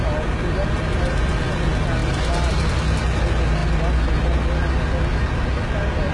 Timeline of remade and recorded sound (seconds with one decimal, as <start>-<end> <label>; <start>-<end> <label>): 0.0-6.1 recorded